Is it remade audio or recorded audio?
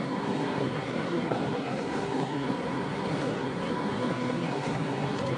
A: remade